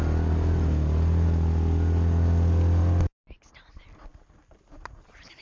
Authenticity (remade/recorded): recorded